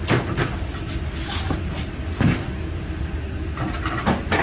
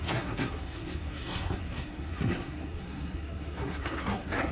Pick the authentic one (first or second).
first